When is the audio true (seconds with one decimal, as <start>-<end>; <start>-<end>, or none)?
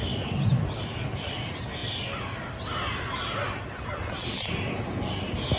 0.0-5.6